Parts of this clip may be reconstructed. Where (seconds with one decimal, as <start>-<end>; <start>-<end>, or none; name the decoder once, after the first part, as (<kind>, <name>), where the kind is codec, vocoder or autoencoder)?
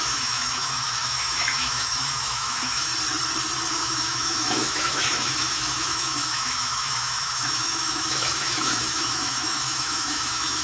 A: 0.0-2.9 (autoencoder, DAC-VAE); 3.7-10.6